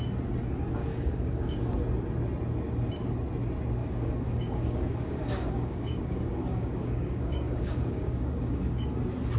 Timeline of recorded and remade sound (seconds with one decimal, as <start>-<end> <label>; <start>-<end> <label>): 0.0-0.8 recorded; 0.8-1.7 remade; 1.7-3.8 recorded; 3.8-9.0 remade; 9.0-9.4 recorded

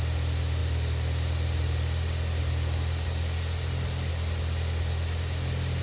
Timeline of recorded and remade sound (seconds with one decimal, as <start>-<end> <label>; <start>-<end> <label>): 0.0-5.8 recorded

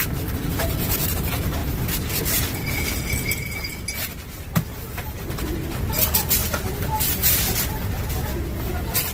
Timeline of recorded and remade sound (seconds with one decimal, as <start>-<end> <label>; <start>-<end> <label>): 0.0-0.5 recorded; 0.5-1.1 remade; 1.1-9.1 recorded

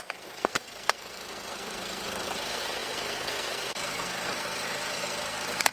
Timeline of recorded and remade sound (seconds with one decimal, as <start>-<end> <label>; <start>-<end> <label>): 0.0-5.7 remade

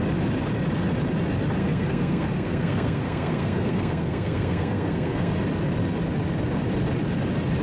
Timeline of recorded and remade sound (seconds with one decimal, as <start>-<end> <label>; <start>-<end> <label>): 0.0-1.6 recorded; 1.6-5.3 remade; 5.3-7.6 recorded

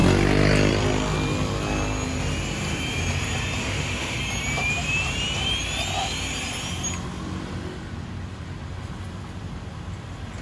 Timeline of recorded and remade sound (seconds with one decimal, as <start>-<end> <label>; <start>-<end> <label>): 0.0-3.6 recorded; 3.6-4.2 remade; 4.2-10.4 recorded